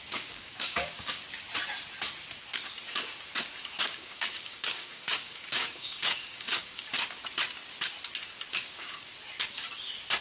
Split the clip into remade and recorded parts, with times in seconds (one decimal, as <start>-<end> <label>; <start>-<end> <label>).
0.0-1.2 remade; 1.2-3.6 recorded; 3.6-6.9 remade; 6.9-8.5 recorded; 8.5-9.1 remade; 9.1-10.2 recorded